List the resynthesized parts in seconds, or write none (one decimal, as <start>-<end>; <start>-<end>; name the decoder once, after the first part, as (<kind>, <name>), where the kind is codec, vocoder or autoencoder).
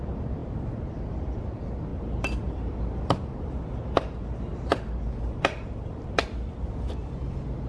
1.9-6.2 (vocoder, BigVGAN v2)